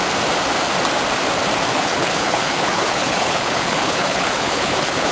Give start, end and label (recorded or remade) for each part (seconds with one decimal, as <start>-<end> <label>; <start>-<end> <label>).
0.0-1.7 recorded; 1.7-5.1 remade